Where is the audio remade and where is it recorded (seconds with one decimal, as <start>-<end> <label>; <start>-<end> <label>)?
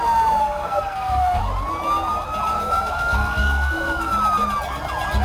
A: 0.0-0.4 recorded; 0.4-1.4 remade; 1.4-2.5 recorded; 2.5-4.1 remade; 4.1-5.2 recorded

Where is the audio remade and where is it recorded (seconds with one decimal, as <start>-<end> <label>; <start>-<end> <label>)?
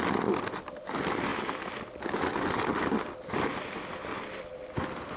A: 0.0-5.2 recorded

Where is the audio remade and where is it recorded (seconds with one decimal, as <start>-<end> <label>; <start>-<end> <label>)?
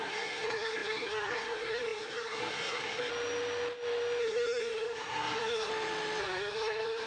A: 0.0-3.1 remade; 3.1-4.2 recorded; 4.2-5.7 remade; 5.7-6.2 recorded; 6.2-7.1 remade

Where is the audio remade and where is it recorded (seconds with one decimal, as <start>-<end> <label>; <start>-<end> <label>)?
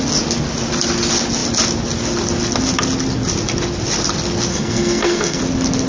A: 0.0-4.5 recorded; 4.5-5.4 remade; 5.4-5.9 recorded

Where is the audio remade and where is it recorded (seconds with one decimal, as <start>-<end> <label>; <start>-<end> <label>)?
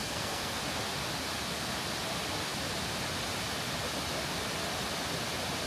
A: 0.0-0.6 remade; 0.6-5.7 recorded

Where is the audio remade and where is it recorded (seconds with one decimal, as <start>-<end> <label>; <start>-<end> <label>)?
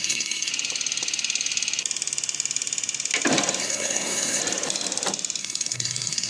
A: 0.0-0.5 remade; 0.5-3.6 recorded; 3.6-4.4 remade; 4.4-5.4 recorded; 5.4-6.3 remade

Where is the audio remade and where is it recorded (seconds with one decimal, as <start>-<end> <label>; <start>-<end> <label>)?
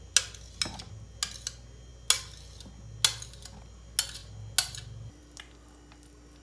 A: 0.0-6.4 recorded